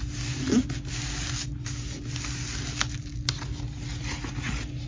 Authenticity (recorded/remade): recorded